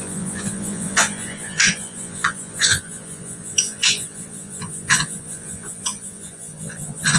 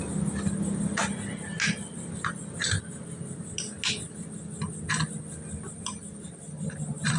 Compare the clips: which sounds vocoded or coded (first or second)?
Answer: first